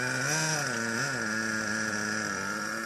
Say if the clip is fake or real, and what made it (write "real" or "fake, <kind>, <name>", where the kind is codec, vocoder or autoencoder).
real